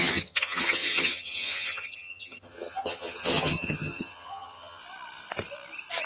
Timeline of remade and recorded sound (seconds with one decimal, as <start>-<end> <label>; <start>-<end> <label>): 0.0-4.8 remade; 4.8-6.1 recorded